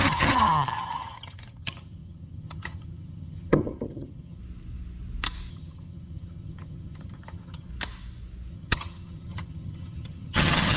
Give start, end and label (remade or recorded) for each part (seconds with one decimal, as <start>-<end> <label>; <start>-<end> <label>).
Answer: 0.0-4.4 remade; 4.4-5.5 recorded; 5.5-7.7 remade; 7.7-8.5 recorded; 8.5-10.8 remade